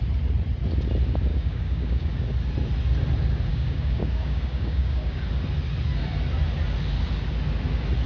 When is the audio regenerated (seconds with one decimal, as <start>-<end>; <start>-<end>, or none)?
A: 1.3-2.1; 3.5-5.2